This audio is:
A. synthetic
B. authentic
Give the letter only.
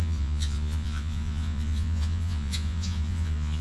A